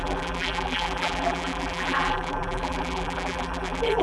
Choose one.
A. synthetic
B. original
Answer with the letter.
A